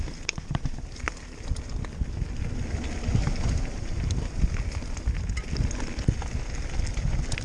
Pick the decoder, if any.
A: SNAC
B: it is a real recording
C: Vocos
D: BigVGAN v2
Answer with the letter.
B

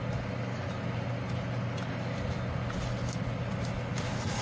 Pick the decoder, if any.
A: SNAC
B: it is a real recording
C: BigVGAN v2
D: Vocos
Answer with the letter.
B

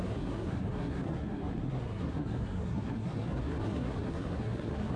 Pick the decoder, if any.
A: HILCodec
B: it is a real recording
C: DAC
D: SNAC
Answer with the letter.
D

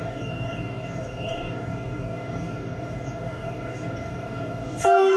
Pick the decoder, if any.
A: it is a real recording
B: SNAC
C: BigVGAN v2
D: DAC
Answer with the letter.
D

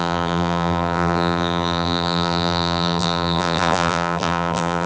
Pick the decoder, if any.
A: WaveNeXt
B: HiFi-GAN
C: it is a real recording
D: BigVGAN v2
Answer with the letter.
D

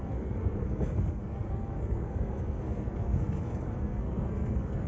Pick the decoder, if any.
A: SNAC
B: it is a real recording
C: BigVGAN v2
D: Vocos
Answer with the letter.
A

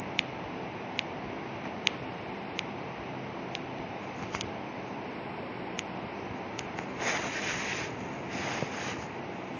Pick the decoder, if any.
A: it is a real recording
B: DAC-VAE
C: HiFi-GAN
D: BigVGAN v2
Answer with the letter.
A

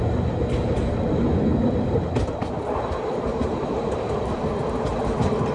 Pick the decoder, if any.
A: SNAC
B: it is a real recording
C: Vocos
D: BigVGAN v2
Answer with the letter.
B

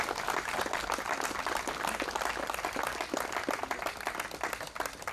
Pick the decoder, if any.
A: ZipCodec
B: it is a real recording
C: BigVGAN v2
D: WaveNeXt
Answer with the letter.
B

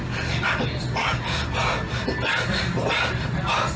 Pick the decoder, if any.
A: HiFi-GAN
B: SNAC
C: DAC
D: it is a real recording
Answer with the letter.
D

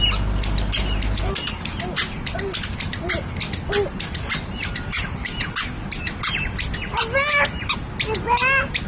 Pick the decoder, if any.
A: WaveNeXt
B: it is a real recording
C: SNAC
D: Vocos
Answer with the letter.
B